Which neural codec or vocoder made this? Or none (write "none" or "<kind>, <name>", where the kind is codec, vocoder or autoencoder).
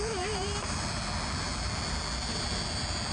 vocoder, BigVGAN v2